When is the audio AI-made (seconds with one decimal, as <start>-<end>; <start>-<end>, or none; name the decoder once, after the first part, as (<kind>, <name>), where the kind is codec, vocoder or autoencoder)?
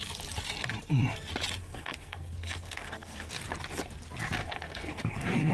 1.6-3.3 (codec, SNAC); 4.4-5.5